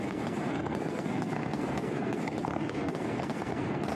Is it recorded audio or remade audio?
remade